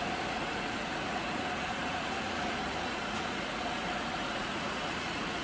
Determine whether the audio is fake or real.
fake